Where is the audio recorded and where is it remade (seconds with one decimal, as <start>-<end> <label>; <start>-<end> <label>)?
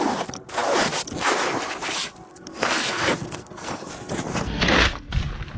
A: 0.0-2.3 recorded; 2.3-3.9 remade; 3.9-4.3 recorded; 4.3-5.1 remade; 5.1-5.6 recorded